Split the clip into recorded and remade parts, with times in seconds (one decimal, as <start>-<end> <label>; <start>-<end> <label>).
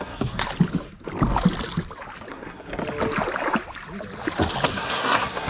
0.0-0.4 remade; 0.4-2.3 recorded; 2.3-2.8 remade; 2.8-4.7 recorded; 4.7-5.5 remade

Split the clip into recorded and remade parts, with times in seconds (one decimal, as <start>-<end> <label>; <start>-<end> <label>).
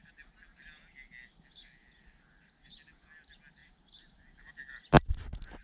0.0-3.6 recorded; 3.6-5.1 remade; 5.1-5.6 recorded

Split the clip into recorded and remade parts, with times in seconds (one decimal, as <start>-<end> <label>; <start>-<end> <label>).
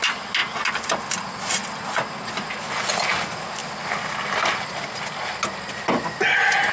0.0-6.7 recorded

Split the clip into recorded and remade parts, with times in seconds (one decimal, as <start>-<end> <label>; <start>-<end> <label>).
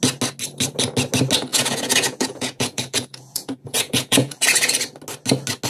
0.0-1.5 recorded; 1.5-4.7 remade; 4.7-5.7 recorded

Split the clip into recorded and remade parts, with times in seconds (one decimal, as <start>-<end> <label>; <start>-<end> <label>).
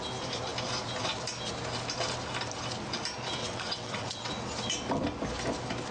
0.0-3.4 recorded; 3.4-4.3 remade; 4.3-5.9 recorded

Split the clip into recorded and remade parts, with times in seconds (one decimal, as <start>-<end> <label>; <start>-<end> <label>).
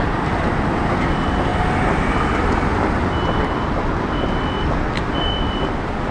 0.0-6.1 recorded